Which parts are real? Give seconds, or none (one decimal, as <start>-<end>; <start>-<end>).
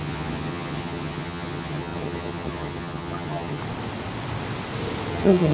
3.6-5.1